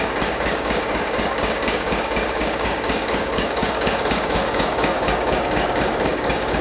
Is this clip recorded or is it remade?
remade